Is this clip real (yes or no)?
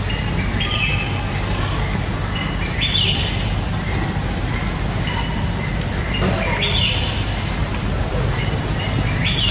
yes